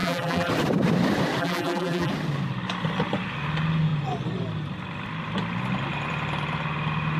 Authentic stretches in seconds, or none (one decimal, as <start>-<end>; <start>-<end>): 0.5-1.4; 2.1-7.2